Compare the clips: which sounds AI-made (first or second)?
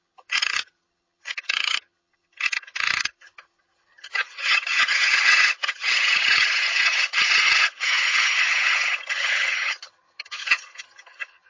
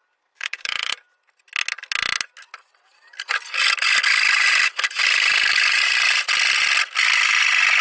first